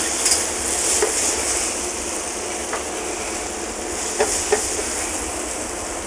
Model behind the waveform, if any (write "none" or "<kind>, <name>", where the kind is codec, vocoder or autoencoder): none